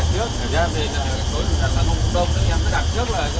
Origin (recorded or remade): recorded